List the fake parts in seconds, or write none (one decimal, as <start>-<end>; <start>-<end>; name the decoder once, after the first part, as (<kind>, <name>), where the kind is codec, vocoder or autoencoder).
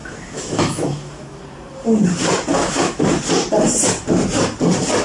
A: 0.0-1.4 (autoencoder, DAC-VAE); 2.5-3.0